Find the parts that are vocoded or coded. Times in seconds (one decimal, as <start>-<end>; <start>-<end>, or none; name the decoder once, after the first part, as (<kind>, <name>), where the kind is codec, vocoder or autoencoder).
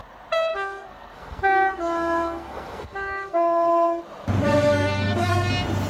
0.5-4.0 (codec, SNAC); 4.4-5.5